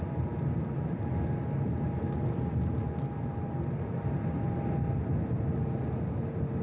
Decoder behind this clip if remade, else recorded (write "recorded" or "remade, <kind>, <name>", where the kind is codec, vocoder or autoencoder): recorded